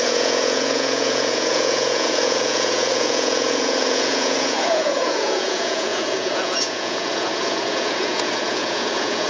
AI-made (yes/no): yes